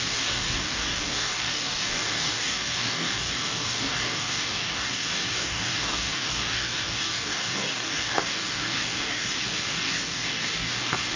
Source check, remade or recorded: remade